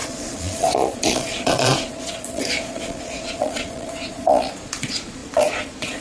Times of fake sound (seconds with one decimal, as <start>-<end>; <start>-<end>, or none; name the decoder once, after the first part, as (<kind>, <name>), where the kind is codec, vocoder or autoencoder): 0.0-6.0 (vocoder, Vocos)